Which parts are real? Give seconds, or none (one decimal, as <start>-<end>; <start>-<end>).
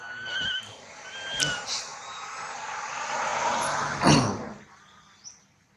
0.0-5.8